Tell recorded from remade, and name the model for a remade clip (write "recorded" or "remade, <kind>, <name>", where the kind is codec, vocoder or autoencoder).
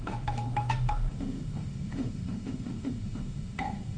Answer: remade, autoencoder, DAC-VAE